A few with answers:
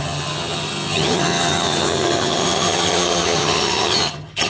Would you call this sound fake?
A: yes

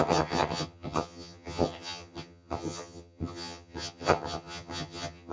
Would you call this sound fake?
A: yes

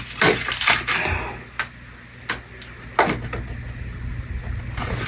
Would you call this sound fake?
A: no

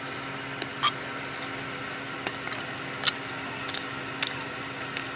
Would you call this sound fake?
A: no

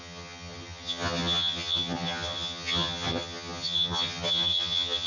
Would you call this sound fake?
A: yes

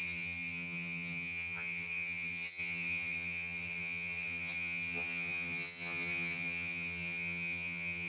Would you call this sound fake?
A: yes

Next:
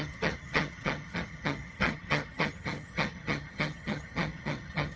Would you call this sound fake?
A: yes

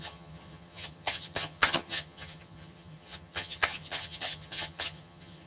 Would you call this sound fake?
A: yes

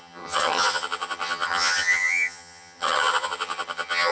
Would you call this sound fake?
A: yes